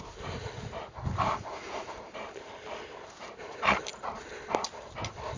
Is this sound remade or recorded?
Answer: remade